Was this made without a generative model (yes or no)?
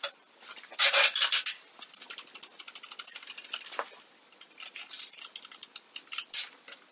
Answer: yes